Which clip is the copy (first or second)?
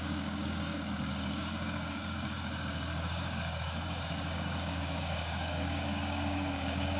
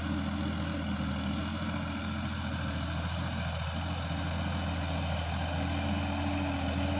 first